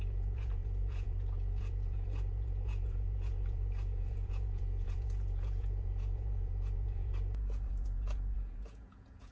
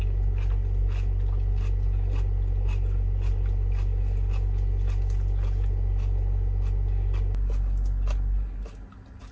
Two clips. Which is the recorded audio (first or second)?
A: second